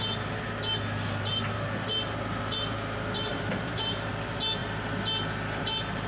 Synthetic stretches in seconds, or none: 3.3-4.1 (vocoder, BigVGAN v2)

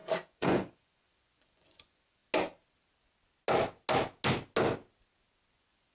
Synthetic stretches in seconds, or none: 0.0-2.2 (vocoder, Vocos); 5.5-5.9

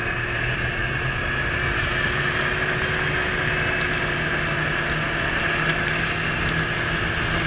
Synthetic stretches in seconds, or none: none

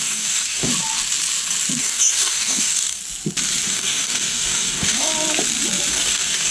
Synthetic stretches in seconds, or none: 0.0-0.7 (codec, DAC); 1.8-3.0; 3.7-5.1; 5.9-6.5